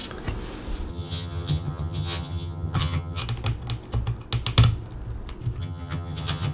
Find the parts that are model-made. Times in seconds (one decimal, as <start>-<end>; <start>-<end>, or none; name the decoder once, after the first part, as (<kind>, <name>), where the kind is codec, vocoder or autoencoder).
0.9-3.2 (vocoder, HiFi-GAN); 5.6-6.5